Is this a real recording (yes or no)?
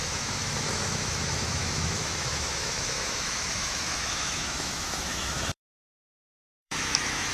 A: no